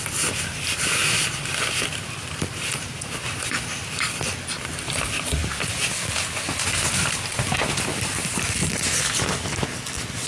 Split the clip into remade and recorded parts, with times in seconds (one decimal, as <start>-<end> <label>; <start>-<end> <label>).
0.0-10.3 recorded